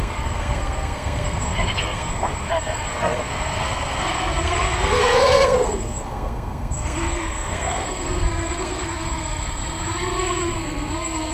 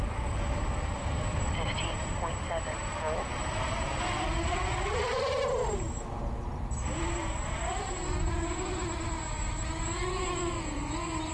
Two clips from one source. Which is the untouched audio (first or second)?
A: second